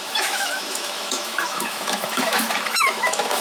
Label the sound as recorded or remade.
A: remade